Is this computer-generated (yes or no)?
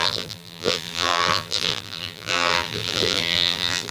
yes